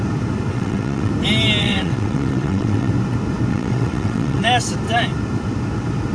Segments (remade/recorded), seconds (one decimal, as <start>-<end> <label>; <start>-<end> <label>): 0.0-0.5 recorded; 0.5-1.1 remade; 1.1-1.6 recorded; 1.6-2.9 remade; 2.9-3.5 recorded; 3.5-4.4 remade; 4.4-6.1 recorded